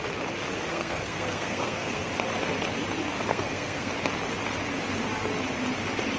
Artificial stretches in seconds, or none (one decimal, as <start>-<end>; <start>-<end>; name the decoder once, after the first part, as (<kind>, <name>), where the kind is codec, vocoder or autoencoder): 0.7-2.1 (codec, SNAC); 3.3-3.9